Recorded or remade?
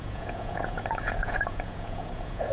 remade